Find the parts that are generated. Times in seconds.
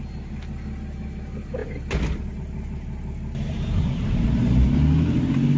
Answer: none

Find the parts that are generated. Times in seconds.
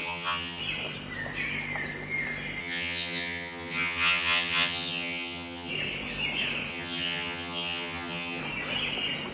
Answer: 0.0-0.6 (vocoder, HiFi-GAN); 2.6-5.7; 6.7-8.4